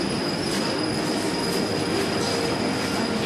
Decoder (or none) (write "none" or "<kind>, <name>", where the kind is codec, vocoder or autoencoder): none